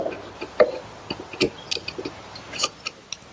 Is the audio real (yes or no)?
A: yes